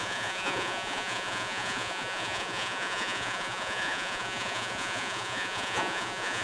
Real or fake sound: fake